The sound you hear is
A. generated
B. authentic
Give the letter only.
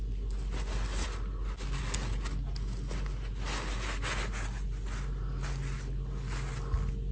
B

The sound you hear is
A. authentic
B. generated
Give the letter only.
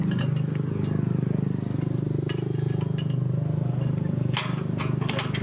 A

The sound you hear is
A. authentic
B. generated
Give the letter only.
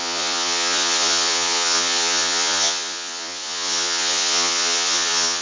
B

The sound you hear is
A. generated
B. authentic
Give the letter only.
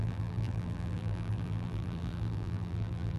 A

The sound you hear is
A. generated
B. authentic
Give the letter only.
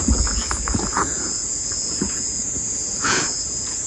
A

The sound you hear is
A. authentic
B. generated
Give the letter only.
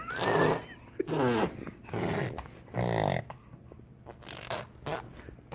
A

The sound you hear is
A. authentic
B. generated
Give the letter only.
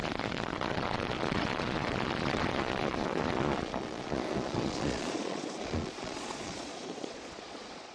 B